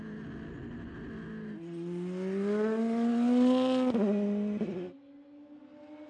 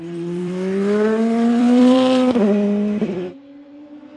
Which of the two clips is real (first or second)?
first